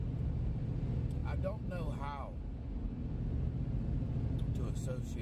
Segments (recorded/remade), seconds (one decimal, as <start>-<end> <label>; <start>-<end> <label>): 0.0-5.2 recorded